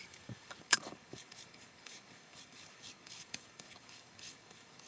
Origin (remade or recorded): remade